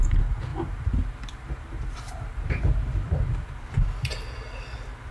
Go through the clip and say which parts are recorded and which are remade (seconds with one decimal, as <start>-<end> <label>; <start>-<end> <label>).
0.0-0.5 recorded; 0.5-3.5 remade; 3.5-5.1 recorded